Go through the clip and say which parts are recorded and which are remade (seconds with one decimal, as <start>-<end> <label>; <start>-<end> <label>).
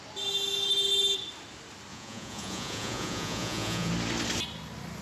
0.0-1.9 recorded; 1.9-3.9 remade; 3.9-5.0 recorded